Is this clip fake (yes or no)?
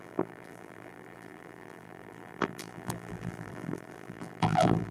yes